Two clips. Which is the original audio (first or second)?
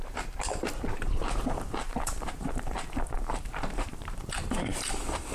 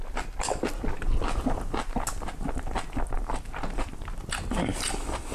second